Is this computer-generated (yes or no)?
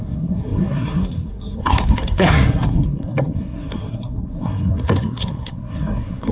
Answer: yes